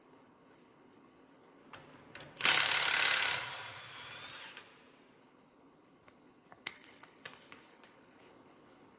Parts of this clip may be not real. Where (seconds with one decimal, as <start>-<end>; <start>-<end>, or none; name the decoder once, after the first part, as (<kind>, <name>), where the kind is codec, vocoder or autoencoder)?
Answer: 0.0-1.6 (codec, HILCodec); 5.2-9.0

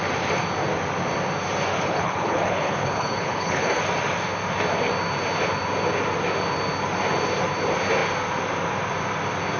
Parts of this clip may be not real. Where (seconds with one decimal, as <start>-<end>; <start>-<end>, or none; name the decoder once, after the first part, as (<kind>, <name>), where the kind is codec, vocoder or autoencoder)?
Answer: 1.7-3.8 (codec, HILCodec)